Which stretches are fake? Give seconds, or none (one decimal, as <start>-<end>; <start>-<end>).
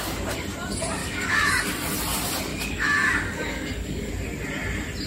1.0-1.6; 2.5-4.1